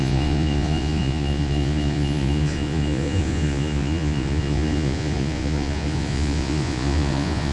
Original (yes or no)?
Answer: no